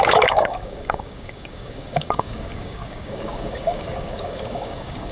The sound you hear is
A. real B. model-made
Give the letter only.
B